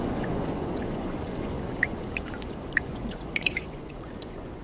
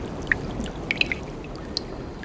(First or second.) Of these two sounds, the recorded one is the second